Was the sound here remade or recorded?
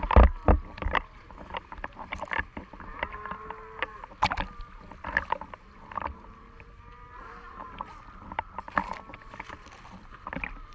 recorded